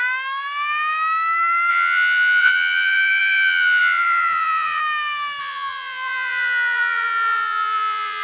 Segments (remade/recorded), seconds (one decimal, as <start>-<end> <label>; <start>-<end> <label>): 0.0-1.7 recorded; 1.7-4.8 remade; 4.8-5.4 recorded; 5.4-8.2 remade